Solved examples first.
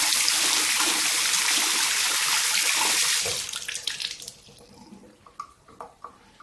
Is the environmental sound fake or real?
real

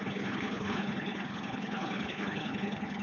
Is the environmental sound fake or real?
fake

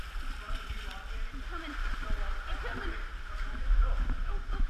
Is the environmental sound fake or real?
real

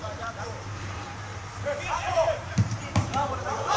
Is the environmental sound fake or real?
fake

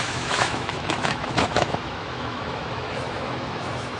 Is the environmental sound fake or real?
fake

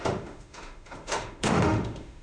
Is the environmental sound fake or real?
fake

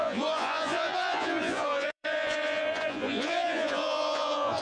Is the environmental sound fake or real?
fake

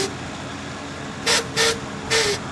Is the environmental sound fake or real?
real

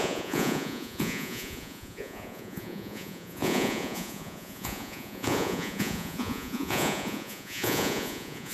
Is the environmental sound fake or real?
fake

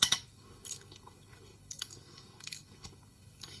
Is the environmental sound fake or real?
fake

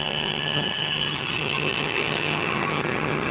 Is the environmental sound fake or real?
fake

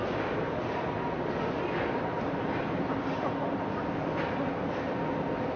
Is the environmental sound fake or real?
real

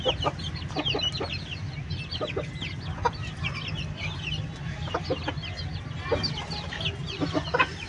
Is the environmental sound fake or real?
real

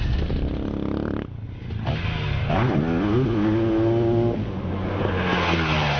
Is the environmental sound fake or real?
real